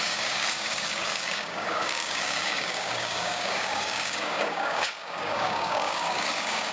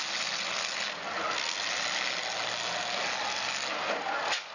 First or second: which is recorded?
second